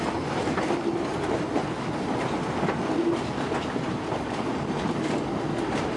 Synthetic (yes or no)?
no